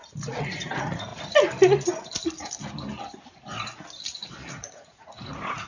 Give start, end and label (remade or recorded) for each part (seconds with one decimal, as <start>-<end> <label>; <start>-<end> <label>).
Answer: 0.0-1.1 remade; 1.1-4.5 recorded; 4.5-5.7 remade

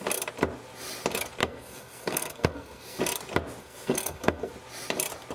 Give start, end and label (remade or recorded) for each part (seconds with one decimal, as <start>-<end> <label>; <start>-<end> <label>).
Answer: 0.0-1.4 recorded; 1.4-3.0 remade; 3.0-3.6 recorded; 3.6-4.5 remade; 4.5-5.3 recorded

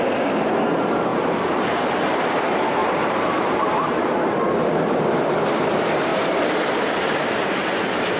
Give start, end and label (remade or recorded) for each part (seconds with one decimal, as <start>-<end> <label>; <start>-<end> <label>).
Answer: 0.0-2.8 recorded; 2.8-4.4 remade; 4.4-6.1 recorded; 6.1-8.2 remade

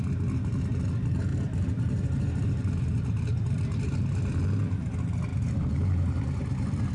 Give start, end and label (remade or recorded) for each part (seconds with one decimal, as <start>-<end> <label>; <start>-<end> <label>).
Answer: 0.0-1.3 recorded; 1.3-3.6 remade; 3.6-5.3 recorded; 5.3-6.9 remade

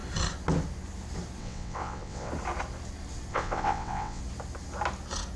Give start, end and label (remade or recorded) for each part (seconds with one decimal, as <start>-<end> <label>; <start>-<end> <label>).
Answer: 0.0-1.4 recorded; 1.4-2.3 remade; 2.3-3.3 recorded; 3.3-4.2 remade; 4.2-5.4 recorded